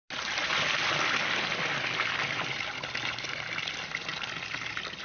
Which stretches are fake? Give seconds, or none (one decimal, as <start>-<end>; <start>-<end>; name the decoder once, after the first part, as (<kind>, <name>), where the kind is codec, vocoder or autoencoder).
none